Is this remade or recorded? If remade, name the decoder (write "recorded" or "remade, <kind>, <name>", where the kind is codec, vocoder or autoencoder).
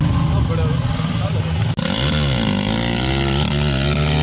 recorded